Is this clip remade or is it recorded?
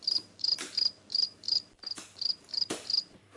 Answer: remade